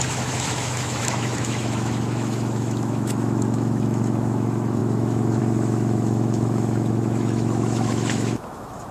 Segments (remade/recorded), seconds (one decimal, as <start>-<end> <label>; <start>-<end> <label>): 0.0-8.9 remade